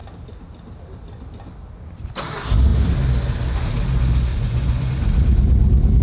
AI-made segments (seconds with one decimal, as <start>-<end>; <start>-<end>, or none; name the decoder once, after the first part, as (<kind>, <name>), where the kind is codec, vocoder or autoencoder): 4.3-4.9 (vocoder, Vocos)